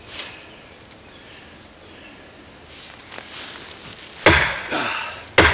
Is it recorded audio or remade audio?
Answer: recorded